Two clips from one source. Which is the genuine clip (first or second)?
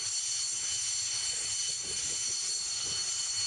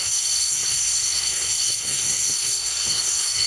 first